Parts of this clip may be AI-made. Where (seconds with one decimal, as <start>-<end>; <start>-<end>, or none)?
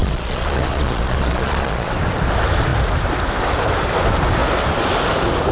0.0-1.9